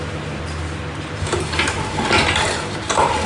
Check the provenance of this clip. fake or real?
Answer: real